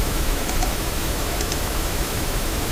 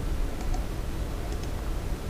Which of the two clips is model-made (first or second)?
first